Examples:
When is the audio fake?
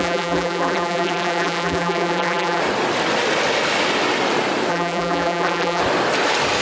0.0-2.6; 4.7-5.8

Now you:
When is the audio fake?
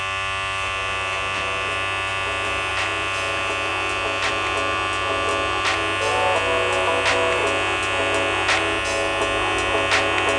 none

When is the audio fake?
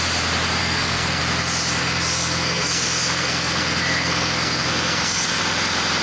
0.6-1.2; 1.8-5.4